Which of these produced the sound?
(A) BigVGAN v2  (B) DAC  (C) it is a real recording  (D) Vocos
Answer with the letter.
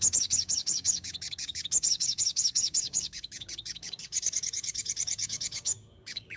B